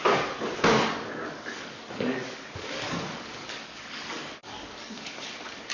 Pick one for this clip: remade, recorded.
remade